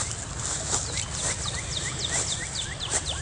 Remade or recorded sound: recorded